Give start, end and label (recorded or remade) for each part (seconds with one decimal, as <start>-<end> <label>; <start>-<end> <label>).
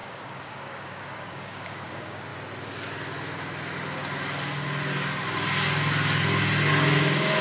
0.0-2.3 remade; 2.3-6.7 recorded; 6.7-7.4 remade